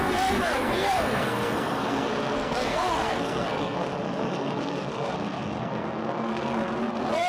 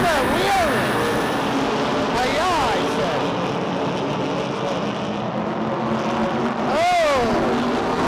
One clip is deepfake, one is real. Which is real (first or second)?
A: second